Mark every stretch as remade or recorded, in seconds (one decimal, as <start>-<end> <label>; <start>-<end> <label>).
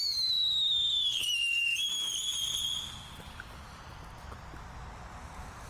0.0-5.7 recorded